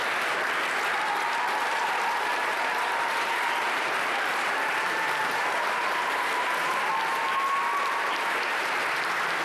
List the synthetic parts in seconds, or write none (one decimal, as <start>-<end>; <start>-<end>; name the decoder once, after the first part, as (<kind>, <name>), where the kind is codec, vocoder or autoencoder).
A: 2.2-6.9 (vocoder, BigVGAN v2)